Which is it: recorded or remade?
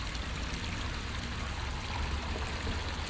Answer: recorded